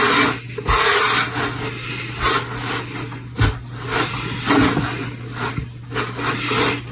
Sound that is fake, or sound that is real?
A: real